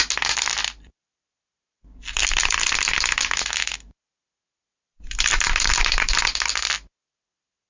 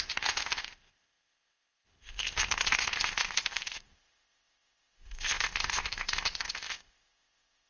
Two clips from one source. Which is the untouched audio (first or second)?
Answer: first